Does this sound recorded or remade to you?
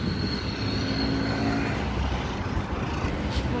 recorded